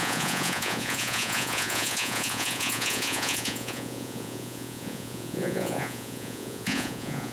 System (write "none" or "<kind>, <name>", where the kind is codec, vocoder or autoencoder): vocoder, Vocos